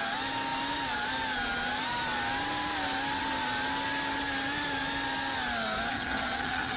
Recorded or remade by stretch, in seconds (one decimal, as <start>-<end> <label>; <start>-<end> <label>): 0.0-5.9 recorded; 5.9-6.8 remade